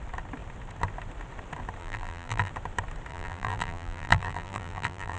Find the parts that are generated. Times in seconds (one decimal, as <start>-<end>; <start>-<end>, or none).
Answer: 1.8-2.5; 3.1-5.2